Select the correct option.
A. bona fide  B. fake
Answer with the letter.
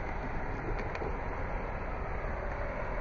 A